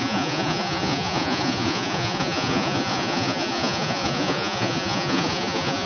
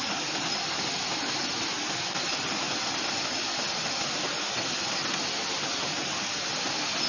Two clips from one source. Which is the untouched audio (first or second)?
second